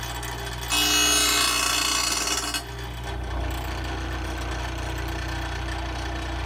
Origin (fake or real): real